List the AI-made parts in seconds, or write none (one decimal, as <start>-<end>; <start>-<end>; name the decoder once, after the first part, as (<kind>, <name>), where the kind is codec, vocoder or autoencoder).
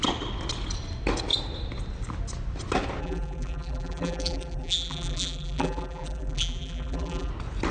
3.0-7.3 (vocoder, BigVGAN v2)